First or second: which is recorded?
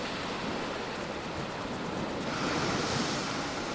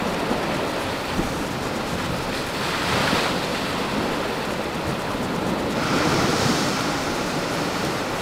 first